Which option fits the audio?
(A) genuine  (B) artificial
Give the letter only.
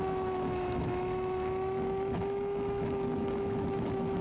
B